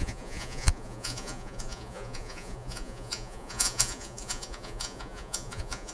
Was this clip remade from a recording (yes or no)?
yes